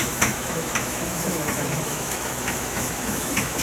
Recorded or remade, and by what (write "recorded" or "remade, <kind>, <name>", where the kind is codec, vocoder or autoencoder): remade, autoencoder, DAC-VAE